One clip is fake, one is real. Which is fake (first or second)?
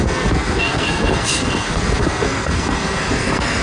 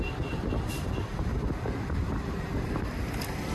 first